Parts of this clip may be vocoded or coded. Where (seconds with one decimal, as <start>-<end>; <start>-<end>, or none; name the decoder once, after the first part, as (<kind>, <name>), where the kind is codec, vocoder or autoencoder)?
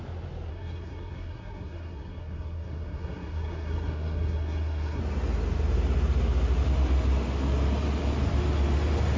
0.5-5.0 (codec, SNAC)